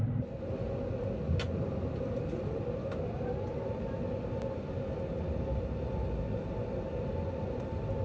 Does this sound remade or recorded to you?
recorded